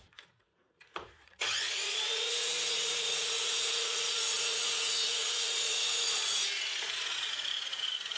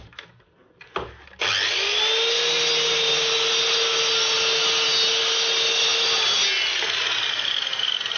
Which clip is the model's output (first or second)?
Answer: first